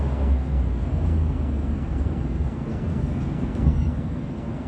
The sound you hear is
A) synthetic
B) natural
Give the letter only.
A